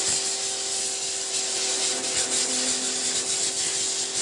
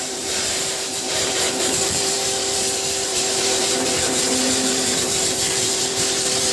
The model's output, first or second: second